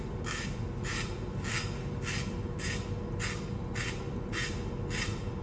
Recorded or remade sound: recorded